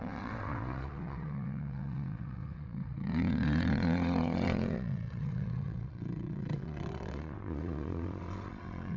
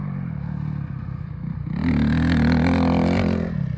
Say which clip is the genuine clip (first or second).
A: second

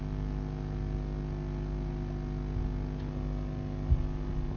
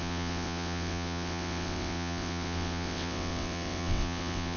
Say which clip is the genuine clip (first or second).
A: first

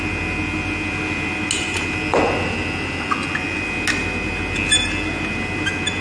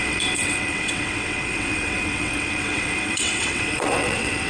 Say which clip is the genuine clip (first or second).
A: first